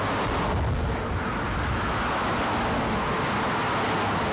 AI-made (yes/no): no